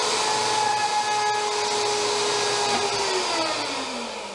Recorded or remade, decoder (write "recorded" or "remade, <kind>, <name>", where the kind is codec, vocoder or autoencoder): recorded